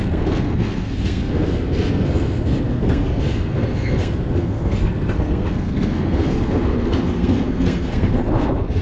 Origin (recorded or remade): remade